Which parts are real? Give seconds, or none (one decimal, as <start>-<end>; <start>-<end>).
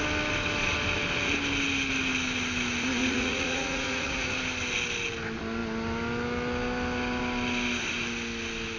0.0-3.0; 4.3-8.8